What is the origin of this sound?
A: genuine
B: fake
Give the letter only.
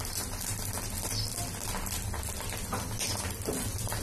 A